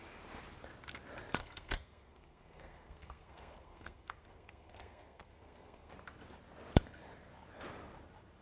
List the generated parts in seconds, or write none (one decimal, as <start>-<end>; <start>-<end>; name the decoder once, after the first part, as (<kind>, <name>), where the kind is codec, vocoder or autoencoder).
1.4-5.9 (codec, SNAC)

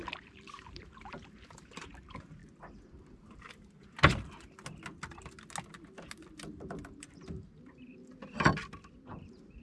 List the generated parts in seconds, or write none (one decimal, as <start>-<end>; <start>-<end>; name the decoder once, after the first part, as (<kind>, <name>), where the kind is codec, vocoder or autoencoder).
0.0-2.4 (vocoder, BigVGAN v2); 7.1-8.0; 8.9-9.6

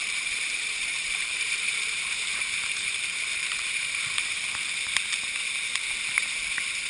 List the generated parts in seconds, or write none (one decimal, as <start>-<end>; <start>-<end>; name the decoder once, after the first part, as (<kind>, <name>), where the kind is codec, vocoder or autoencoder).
0.0-4.1 (vocoder, BigVGAN v2)

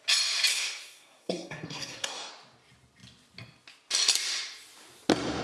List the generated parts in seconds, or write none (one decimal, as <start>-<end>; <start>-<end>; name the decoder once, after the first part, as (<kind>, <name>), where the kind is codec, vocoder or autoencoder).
0.5-2.3 (codec, SNAC)

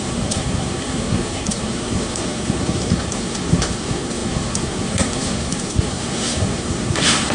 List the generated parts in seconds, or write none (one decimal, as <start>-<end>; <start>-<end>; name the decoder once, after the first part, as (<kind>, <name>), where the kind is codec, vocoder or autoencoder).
0.0-7.3 (codec, SNAC)

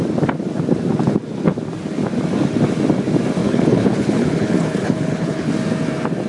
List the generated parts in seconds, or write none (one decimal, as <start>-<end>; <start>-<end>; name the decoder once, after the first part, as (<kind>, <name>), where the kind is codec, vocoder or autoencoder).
3.4-5.5 (codec, HILCodec)

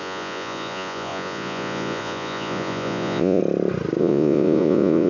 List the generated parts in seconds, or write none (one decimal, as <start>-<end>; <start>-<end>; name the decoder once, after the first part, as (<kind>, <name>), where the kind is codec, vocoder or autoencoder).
0.0-3.4 (vocoder, Vocos); 4.0-5.1